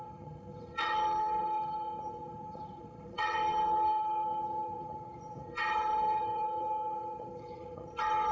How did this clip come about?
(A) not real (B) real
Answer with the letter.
A